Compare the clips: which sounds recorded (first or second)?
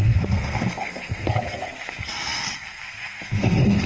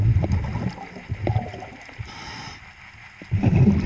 second